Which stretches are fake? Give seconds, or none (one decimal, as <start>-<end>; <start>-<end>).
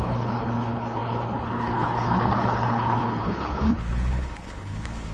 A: 0.0-5.1